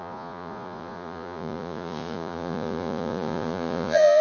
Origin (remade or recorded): remade